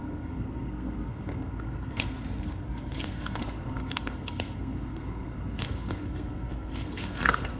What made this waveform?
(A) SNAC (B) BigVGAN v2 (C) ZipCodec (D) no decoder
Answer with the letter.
A